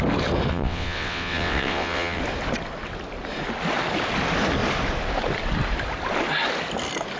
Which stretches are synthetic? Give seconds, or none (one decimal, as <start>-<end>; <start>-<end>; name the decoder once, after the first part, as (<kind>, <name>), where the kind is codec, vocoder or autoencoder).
0.5-2.2 (vocoder, WaveNeXt)

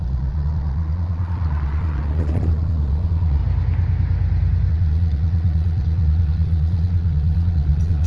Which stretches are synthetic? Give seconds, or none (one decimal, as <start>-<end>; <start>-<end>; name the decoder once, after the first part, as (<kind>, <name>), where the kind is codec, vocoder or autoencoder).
0.0-3.4 (vocoder, Vocos); 4.7-8.1

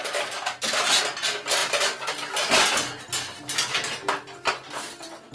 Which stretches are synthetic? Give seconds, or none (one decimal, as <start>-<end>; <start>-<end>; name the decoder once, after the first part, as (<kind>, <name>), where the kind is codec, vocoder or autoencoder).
none

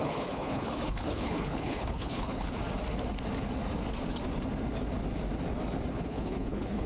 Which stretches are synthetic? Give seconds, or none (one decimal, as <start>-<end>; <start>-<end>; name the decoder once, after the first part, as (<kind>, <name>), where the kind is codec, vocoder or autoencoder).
0.0-2.6 (codec, HILCodec); 5.9-6.9